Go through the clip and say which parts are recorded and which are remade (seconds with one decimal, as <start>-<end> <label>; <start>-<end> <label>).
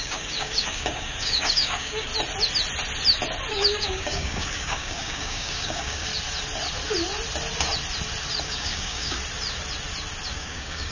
0.0-2.1 remade; 2.1-3.5 recorded; 3.5-6.1 remade; 6.1-8.4 recorded; 8.4-9.2 remade; 9.2-10.3 recorded; 10.3-10.9 remade